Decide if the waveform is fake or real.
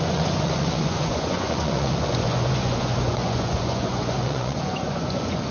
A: fake